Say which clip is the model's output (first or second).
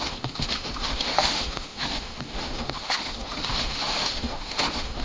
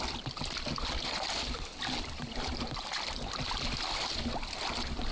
first